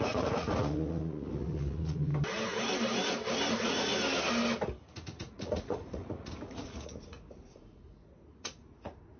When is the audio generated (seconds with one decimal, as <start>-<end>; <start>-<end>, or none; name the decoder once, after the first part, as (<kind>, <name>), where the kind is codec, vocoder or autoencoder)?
0.0-2.1 (vocoder, Vocos); 3.5-3.9; 4.8-9.2